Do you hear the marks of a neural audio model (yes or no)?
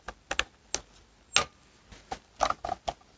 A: no